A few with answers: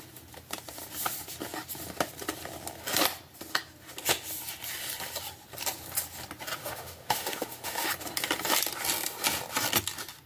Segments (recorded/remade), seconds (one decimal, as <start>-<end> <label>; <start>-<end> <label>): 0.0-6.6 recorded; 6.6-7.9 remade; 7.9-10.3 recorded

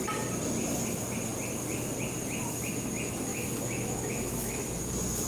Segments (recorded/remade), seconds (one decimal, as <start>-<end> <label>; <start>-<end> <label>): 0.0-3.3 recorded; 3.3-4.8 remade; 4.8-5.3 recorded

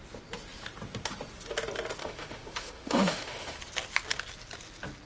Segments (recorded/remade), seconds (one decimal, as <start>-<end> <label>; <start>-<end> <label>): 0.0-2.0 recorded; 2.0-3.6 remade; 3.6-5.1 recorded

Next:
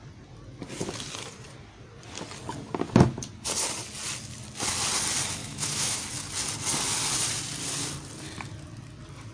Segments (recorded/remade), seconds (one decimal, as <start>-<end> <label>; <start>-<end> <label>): 0.0-5.4 recorded; 5.4-6.0 remade; 6.0-9.3 recorded

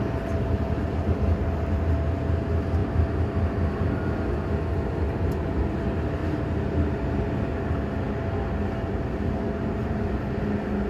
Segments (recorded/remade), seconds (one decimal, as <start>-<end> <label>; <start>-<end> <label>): 0.0-10.9 recorded

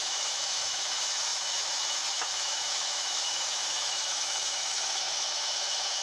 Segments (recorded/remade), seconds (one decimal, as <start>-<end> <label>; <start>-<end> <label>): 0.0-6.0 remade

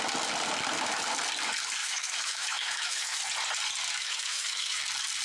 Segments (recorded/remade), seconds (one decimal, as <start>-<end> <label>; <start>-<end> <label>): 0.0-1.8 recorded; 1.8-3.2 remade; 3.2-4.0 recorded; 4.0-4.8 remade; 4.8-5.2 recorded

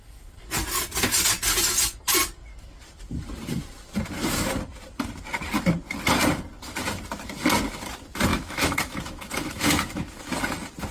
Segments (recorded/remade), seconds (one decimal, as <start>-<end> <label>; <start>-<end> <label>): 0.0-8.3 recorded; 8.3-10.4 remade; 10.4-10.9 recorded